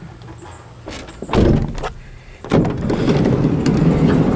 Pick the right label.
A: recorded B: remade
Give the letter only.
A